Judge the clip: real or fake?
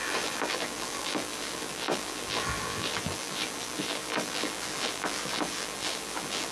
fake